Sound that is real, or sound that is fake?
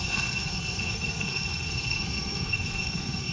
fake